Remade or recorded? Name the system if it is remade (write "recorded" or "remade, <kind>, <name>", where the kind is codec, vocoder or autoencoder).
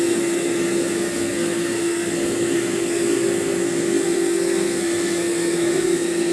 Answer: remade, codec, SNAC